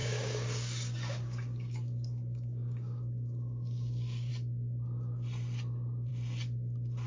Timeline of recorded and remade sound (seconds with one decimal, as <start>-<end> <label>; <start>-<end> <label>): 0.0-4.3 remade; 4.3-7.1 recorded